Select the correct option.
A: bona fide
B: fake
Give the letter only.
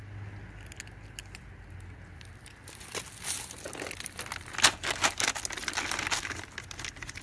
A